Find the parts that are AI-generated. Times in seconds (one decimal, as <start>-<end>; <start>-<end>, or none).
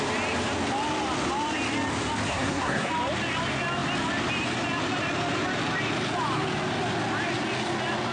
2.3-2.9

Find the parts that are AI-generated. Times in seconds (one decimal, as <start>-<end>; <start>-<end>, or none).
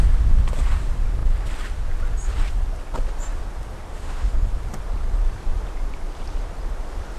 3.9-4.5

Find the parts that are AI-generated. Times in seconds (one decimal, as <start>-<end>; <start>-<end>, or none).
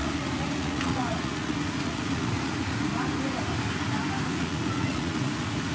0.0-2.9; 4.3-5.7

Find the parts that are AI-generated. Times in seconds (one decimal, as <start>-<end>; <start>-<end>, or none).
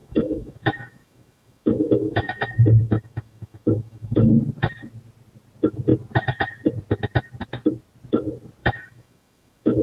0.0-4.4; 8.6-9.8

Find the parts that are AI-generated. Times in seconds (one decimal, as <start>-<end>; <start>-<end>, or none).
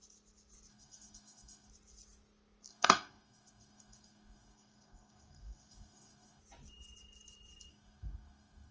0.7-1.7; 2.7-6.4; 7.7-8.7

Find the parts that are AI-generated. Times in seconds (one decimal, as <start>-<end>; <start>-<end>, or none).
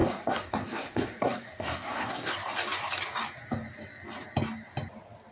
0.0-2.3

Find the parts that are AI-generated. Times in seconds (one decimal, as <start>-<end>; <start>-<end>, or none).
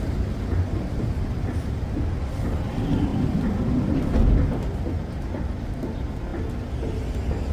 none